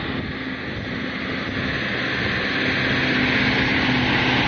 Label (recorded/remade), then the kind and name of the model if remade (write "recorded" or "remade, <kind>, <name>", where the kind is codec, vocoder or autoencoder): recorded